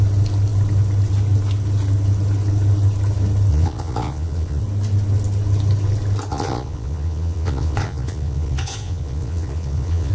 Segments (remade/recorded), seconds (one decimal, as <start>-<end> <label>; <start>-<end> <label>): 0.0-3.5 recorded; 3.5-4.6 remade; 4.6-6.3 recorded; 6.3-10.1 remade